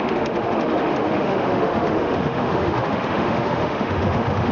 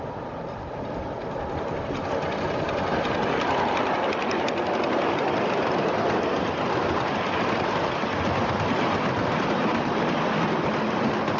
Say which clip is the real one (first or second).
second